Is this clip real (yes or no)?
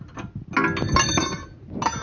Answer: yes